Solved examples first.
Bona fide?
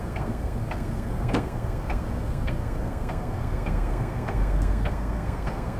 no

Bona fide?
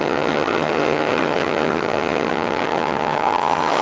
no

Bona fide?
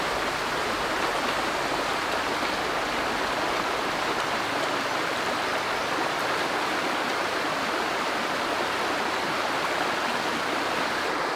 yes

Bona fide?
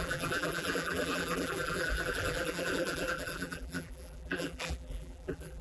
no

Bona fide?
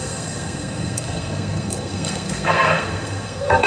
no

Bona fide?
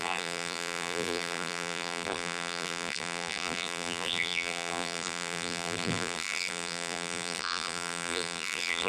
no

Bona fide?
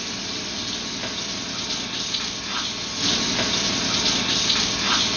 yes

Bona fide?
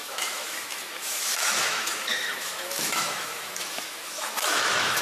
no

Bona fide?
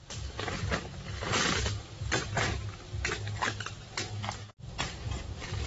yes